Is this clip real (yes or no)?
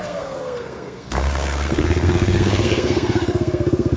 no